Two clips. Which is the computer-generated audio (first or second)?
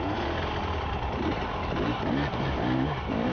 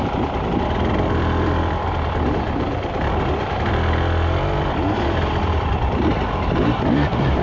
second